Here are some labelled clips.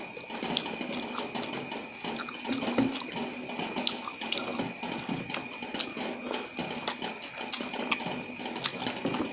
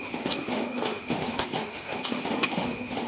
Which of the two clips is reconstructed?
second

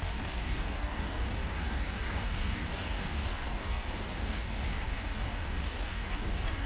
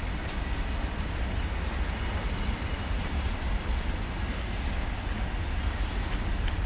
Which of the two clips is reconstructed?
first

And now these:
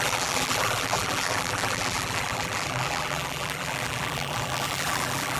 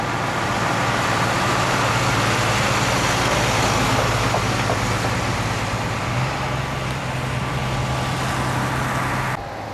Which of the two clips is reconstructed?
first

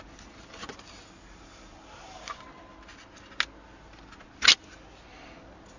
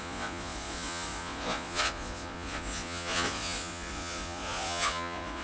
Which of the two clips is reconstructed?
second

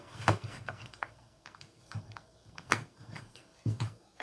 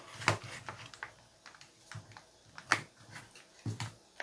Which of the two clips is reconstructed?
first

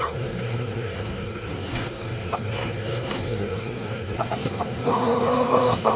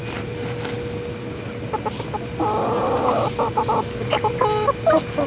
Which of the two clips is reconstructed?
first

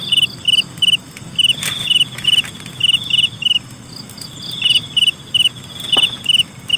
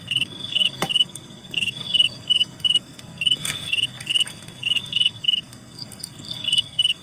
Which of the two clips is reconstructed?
second